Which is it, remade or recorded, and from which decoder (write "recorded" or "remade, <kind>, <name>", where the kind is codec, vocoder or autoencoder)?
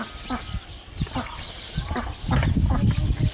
recorded